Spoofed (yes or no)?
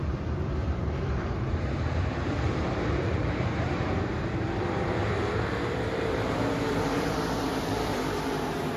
yes